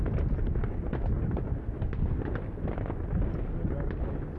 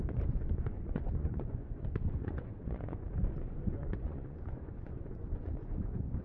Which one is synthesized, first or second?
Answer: second